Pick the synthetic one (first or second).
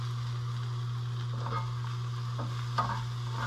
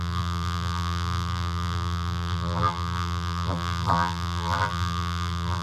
second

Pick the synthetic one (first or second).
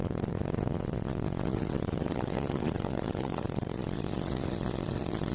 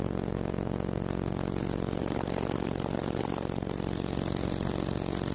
first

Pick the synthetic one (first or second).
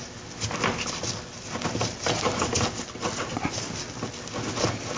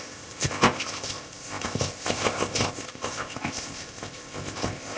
second